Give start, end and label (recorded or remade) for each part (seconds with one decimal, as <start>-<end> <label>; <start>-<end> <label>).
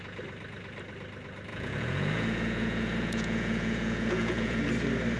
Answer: 0.0-1.5 recorded; 1.5-4.6 remade; 4.6-5.2 recorded